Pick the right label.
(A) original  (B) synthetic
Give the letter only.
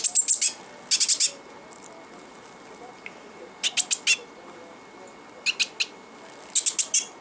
A